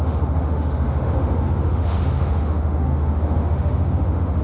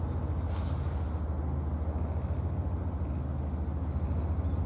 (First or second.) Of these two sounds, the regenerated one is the first